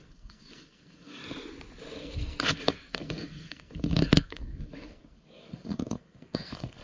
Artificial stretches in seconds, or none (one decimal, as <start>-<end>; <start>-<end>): 0.0-1.2; 2.0-6.8